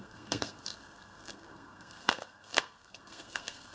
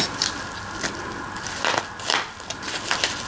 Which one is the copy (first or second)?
first